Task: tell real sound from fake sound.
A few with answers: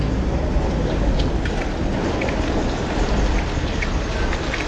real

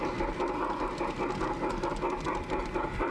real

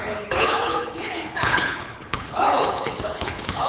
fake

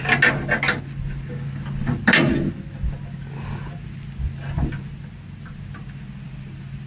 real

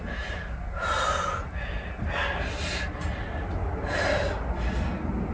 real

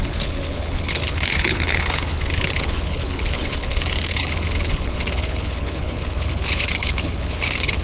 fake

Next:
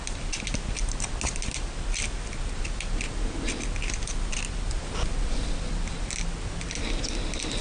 real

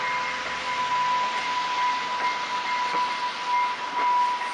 real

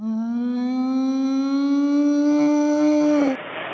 real